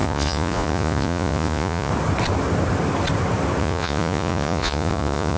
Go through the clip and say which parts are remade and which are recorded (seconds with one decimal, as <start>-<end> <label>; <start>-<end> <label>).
0.0-1.9 remade; 1.9-3.6 recorded; 3.6-5.4 remade